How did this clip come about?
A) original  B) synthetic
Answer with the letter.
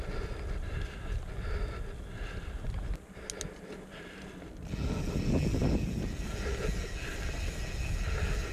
A